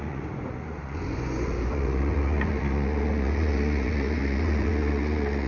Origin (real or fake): fake